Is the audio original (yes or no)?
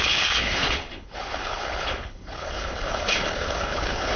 no